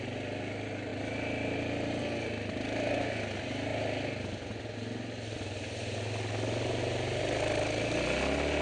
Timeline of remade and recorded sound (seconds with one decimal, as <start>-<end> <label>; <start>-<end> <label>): 0.0-8.6 recorded